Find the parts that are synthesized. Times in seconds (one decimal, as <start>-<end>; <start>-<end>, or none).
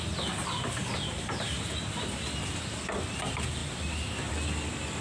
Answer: none